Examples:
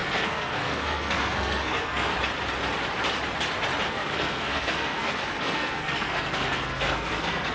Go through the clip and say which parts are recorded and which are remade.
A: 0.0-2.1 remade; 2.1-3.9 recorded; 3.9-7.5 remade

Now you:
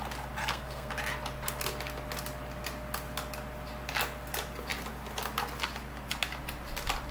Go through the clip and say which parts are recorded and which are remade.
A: 0.0-0.4 recorded; 0.4-0.9 remade; 0.9-7.1 recorded

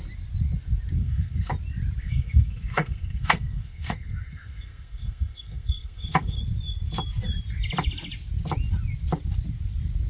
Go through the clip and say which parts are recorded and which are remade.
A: 0.0-1.0 recorded; 1.0-1.5 remade; 1.5-2.0 recorded; 2.0-6.4 remade; 6.4-10.1 recorded

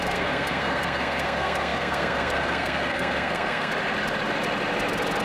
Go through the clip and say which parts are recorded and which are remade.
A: 0.0-3.7 remade; 3.7-5.2 recorded

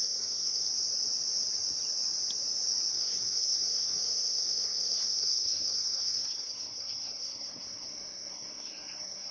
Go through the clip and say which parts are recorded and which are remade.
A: 0.0-0.7 remade; 0.7-2.9 recorded; 2.9-9.3 remade

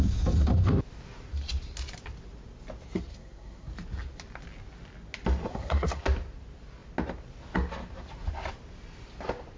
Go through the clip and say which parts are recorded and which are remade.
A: 0.0-3.1 recorded; 3.1-3.7 remade; 3.7-5.5 recorded; 5.5-6.0 remade; 6.0-9.6 recorded